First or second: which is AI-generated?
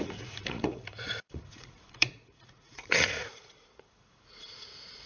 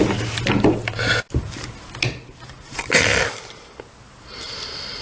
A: first